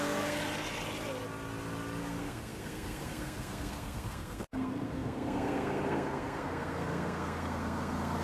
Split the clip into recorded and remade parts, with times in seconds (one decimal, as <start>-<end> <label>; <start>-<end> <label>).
0.0-0.4 remade; 0.4-2.0 recorded; 2.0-8.2 remade